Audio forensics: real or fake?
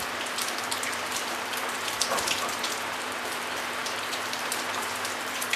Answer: fake